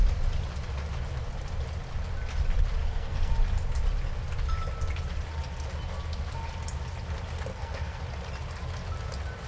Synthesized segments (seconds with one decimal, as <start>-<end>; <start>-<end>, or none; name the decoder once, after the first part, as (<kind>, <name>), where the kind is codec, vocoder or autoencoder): 2.8-3.3 (codec, SNAC); 7.5-8.0